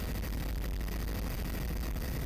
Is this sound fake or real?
real